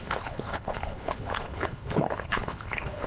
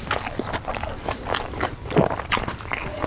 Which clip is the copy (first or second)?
first